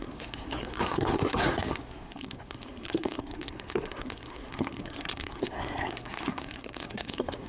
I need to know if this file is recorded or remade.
remade